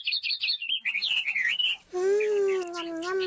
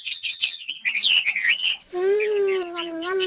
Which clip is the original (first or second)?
first